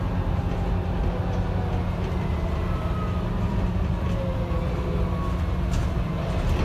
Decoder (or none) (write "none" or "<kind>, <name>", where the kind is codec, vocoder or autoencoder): none